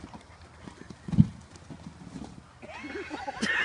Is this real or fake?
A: real